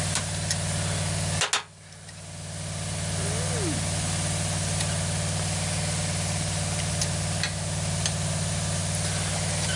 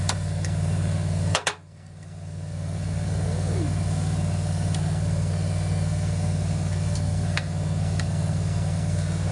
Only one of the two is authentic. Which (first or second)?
first